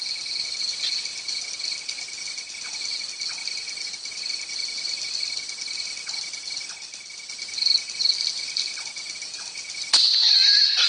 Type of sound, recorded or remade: recorded